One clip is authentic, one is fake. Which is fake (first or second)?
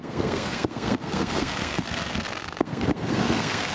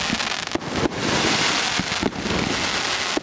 first